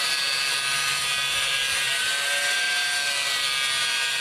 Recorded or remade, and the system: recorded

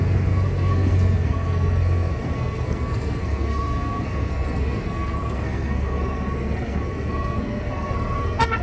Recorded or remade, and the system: remade, codec, SNAC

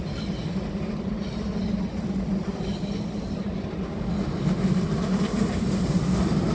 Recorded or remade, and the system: recorded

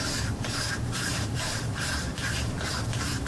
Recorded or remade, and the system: remade, vocoder, BigVGAN v2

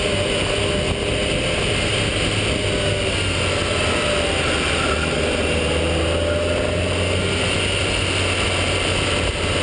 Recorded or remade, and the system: recorded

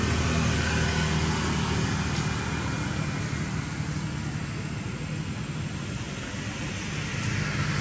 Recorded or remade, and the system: recorded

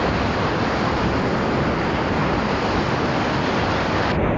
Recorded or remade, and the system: recorded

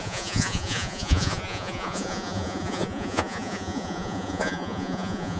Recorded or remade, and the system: remade, vocoder, Vocos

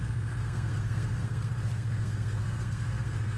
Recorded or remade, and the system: remade, codec, SNAC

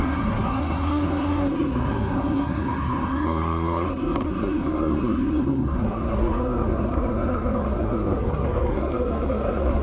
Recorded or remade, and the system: remade, codec, SNAC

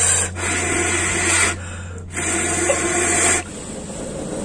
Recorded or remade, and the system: recorded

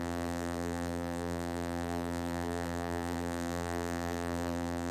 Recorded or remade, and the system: remade, vocoder, BigVGAN v2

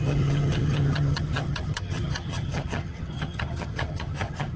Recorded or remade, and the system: remade, vocoder, HiFi-GAN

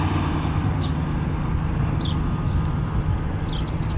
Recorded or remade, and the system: recorded